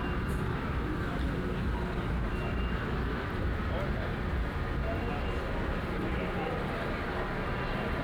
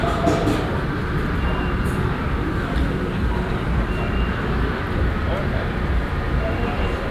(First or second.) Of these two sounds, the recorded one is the first